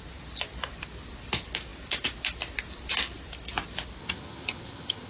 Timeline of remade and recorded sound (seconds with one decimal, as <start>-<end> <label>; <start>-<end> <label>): 0.0-4.0 recorded; 4.0-5.1 remade

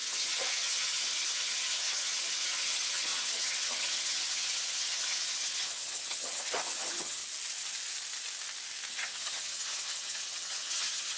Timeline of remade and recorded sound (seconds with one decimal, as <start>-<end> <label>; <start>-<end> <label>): 0.0-7.2 remade; 7.2-8.9 recorded; 8.9-11.2 remade

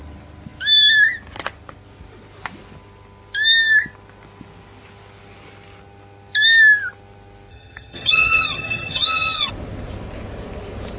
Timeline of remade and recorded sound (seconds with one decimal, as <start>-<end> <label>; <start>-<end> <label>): 0.0-7.5 recorded; 7.5-9.5 remade; 9.5-11.0 recorded